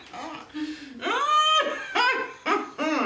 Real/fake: real